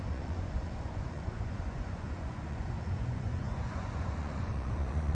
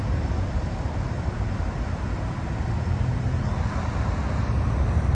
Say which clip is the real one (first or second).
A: second